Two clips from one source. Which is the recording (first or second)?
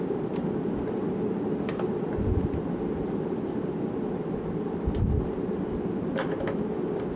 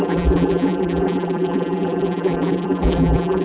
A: first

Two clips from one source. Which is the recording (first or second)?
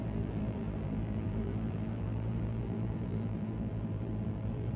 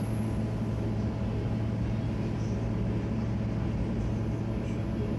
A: second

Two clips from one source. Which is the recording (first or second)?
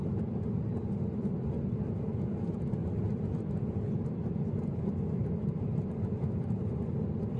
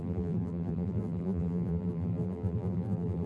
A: first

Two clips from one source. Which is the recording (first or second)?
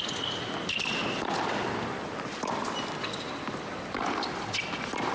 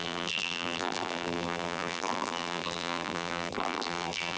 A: first